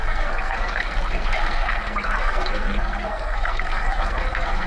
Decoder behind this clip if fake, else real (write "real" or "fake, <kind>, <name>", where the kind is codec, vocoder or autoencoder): fake, codec, SNAC